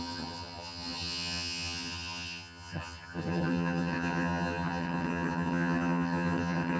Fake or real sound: fake